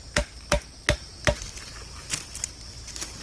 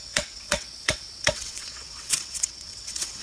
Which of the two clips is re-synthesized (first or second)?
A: second